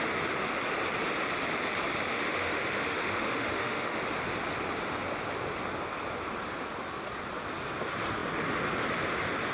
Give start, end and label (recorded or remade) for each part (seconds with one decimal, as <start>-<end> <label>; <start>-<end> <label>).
0.0-2.1 recorded; 2.1-4.0 remade; 4.0-9.5 recorded